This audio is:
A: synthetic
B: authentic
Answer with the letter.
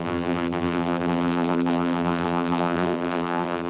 A